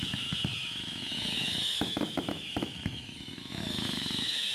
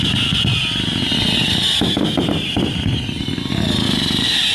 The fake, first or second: first